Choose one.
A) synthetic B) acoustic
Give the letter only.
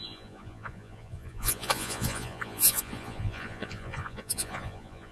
A